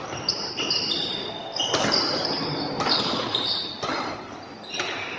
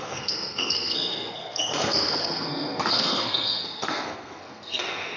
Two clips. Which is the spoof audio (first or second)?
second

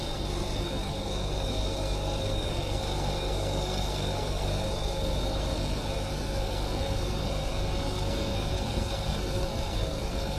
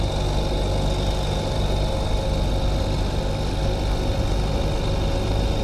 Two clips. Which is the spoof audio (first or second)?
first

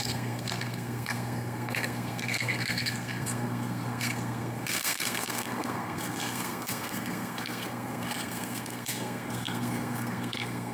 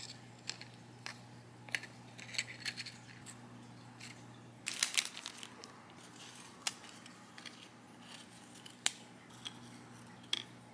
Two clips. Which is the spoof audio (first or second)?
first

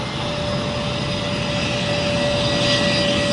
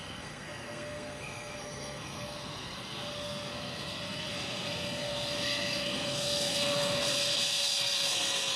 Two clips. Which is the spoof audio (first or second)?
second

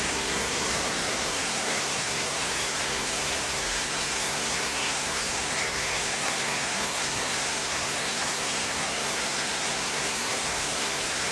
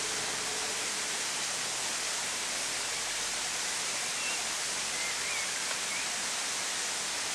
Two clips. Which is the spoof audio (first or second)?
first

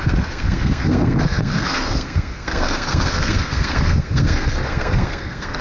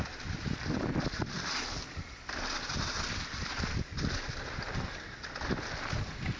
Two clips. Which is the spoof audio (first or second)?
first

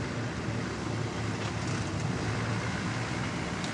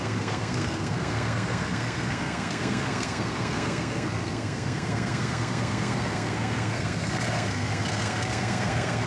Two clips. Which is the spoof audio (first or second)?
second